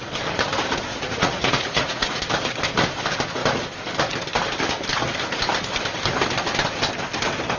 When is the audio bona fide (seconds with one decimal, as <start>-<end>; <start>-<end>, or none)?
0.0-0.9; 2.2-7.6